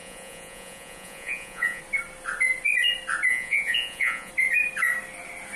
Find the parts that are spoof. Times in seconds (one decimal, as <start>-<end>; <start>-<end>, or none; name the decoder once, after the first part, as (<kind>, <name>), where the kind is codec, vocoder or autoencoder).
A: 0.0-1.8 (vocoder, Vocos); 3.3-4.3